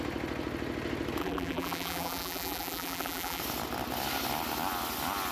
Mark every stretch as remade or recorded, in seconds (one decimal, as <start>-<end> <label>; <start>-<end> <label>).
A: 0.0-1.2 recorded; 1.2-3.4 remade; 3.4-5.3 recorded